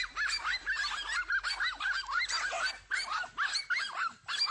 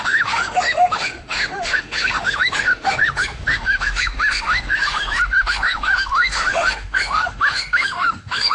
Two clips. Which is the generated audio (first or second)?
second